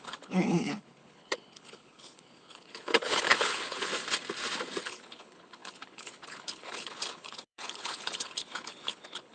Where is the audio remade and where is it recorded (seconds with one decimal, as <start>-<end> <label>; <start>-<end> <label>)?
0.0-3.9 remade; 3.9-4.8 recorded; 4.8-9.3 remade